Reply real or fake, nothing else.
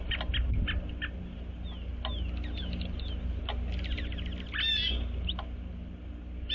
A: real